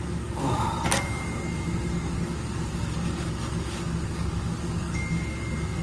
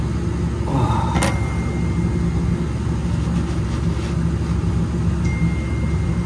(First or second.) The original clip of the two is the second